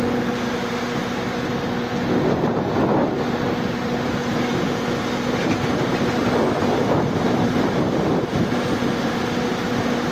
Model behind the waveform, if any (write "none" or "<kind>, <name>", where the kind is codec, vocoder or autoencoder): none